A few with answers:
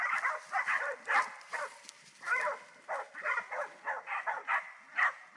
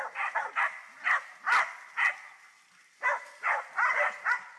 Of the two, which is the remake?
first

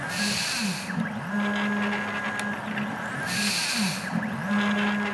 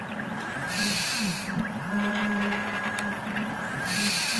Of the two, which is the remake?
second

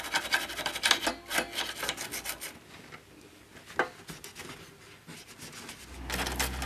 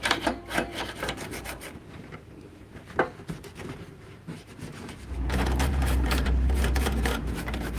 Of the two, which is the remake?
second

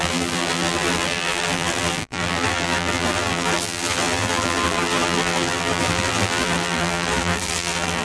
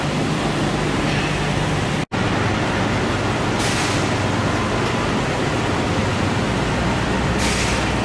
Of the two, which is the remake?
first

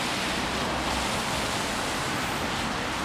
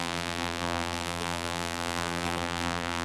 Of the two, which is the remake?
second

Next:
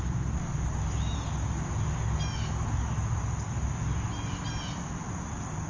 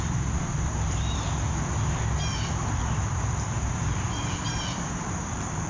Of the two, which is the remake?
second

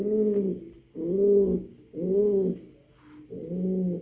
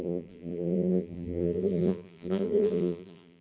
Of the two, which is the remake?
second